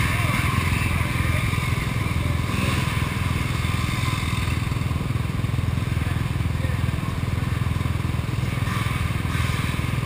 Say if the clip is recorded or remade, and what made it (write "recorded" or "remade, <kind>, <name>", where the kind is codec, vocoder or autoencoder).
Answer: recorded